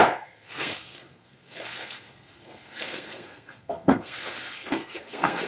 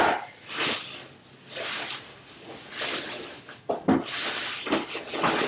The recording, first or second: second